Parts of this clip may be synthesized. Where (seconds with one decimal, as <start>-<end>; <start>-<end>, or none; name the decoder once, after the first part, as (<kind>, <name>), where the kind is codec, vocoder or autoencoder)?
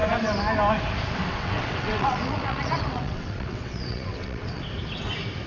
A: 1.3-4.6 (vocoder, WaveNeXt)